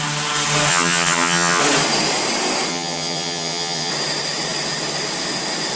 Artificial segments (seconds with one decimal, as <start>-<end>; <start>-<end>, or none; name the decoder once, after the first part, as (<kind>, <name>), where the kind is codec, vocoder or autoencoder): 0.7-1.6 (vocoder, HiFi-GAN); 2.7-3.9